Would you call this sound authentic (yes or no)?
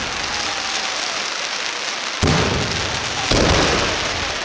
yes